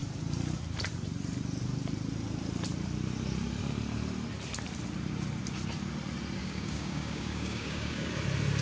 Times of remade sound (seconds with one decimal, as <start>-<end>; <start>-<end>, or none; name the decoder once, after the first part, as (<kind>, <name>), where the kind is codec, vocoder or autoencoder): 6.4-8.1 (codec, DAC)

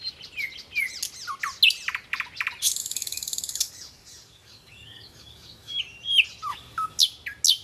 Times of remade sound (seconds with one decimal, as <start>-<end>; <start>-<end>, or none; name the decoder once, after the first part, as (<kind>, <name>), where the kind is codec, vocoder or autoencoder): 2.8-5.8 (codec, DAC); 6.5-7.0